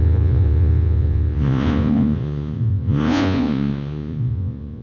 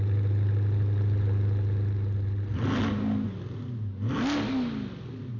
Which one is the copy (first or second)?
first